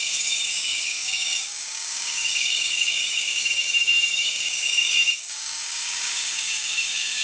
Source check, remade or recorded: remade